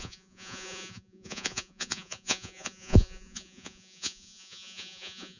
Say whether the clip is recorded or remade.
remade